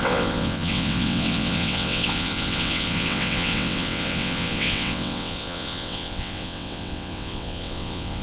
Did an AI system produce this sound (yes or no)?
yes